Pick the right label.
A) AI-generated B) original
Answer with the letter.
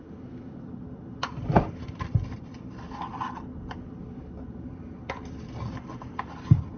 B